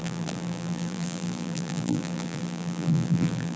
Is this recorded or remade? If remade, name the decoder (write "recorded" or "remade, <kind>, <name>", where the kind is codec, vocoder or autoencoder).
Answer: remade, vocoder, BigVGAN v2